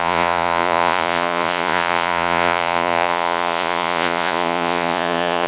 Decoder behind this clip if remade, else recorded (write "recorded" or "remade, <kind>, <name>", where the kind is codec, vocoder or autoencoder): remade, vocoder, Vocos